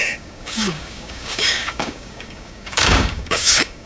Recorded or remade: remade